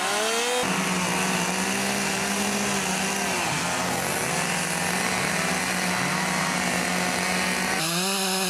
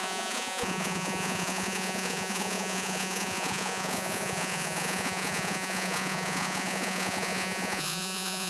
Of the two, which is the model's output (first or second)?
second